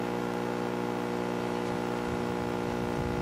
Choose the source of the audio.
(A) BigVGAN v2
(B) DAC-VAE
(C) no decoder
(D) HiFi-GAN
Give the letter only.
C